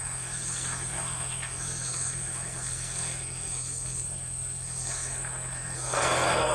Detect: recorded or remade remade